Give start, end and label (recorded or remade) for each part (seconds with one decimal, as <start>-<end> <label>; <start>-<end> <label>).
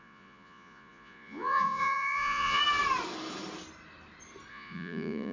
0.0-2.6 remade; 2.6-4.5 recorded; 4.5-5.3 remade